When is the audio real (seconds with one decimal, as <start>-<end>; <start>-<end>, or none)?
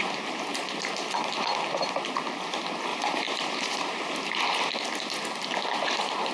0.0-2.9; 4.1-6.3